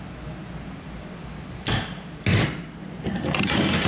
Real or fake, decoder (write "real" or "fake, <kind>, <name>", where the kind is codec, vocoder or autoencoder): real